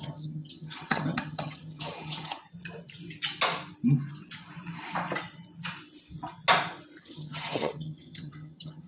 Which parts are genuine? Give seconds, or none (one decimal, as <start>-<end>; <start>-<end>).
2.4-7.0